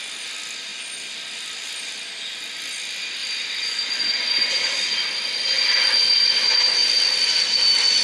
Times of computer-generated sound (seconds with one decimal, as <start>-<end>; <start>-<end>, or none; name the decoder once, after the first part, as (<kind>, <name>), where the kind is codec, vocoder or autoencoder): 3.2-6.3 (vocoder, BigVGAN v2); 6.8-8.0